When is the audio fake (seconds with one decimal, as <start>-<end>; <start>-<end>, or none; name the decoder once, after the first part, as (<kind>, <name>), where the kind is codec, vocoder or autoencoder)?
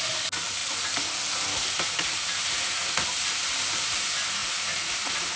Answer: none